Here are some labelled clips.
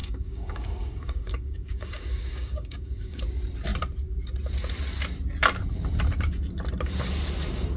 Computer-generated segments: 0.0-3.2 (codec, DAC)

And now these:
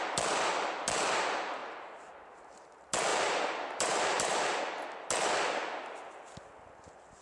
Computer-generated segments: 1.6-2.3 (vocoder, BigVGAN v2); 3.1-4.6